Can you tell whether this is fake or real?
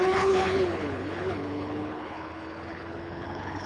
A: fake